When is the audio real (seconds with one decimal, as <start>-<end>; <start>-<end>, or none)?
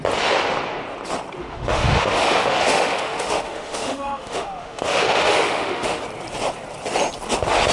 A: 0.0-1.4; 6.0-7.7